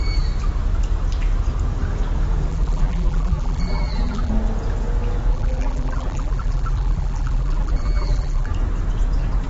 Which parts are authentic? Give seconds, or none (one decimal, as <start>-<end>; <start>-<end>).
0.0-2.5; 4.3-5.3; 8.5-9.5